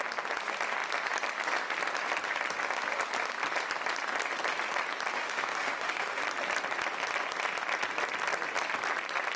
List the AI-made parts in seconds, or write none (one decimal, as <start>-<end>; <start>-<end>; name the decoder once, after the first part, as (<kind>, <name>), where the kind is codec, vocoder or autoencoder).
5.1-6.2 (autoencoder, DAC-VAE)